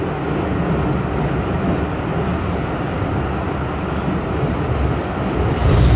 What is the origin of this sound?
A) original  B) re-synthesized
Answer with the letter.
A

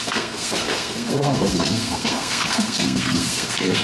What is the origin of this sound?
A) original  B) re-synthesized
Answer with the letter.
B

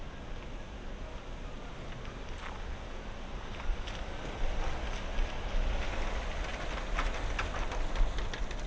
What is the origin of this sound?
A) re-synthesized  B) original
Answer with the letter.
B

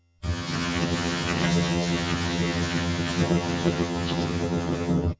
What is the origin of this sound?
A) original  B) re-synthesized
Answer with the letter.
B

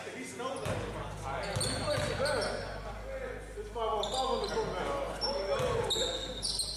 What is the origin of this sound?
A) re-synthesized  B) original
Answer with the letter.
B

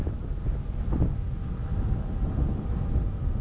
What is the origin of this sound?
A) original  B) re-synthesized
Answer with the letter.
A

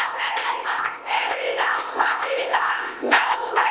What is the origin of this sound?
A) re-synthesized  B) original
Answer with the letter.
A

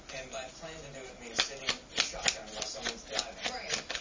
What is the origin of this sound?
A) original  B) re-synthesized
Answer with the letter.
A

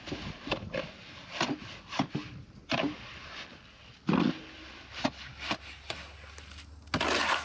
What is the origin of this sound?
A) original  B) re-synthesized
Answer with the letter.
A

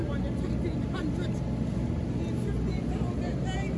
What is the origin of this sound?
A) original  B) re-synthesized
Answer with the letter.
A